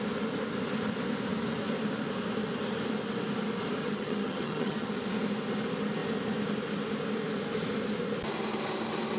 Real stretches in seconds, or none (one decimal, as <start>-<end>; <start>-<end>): 0.0-3.8; 4.9-9.2